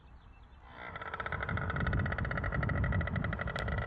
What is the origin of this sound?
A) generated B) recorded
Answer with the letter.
B